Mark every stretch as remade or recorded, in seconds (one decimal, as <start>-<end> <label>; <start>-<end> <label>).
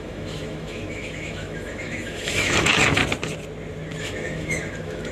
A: 0.0-3.0 remade; 3.0-4.0 recorded; 4.0-5.1 remade